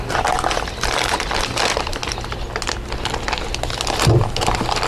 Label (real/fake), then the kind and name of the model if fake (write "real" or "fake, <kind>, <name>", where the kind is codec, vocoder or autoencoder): real